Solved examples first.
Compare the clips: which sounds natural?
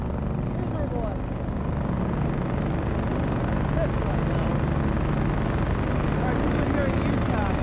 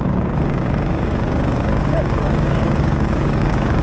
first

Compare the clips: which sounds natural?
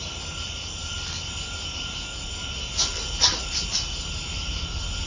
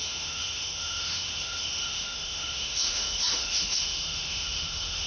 first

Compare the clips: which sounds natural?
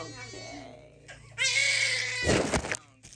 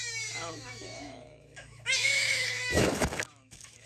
first